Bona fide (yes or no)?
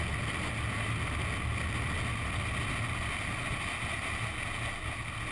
yes